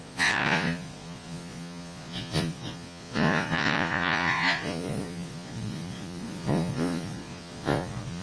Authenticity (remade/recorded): remade